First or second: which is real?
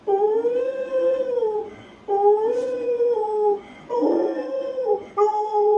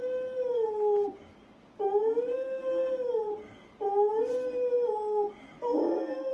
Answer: second